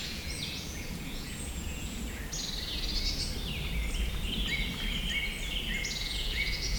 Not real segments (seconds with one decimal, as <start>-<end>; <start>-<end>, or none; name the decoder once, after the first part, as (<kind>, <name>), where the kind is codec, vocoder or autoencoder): 0.0-2.0 (vocoder, Vocos); 6.0-6.8